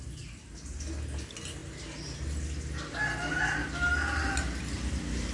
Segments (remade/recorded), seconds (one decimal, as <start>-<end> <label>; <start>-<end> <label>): 0.0-5.3 recorded

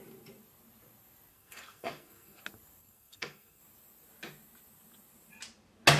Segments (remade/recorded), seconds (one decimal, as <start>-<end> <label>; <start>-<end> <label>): 0.0-1.3 recorded; 1.3-2.4 remade; 2.4-2.8 recorded; 2.8-3.6 remade; 3.6-6.0 recorded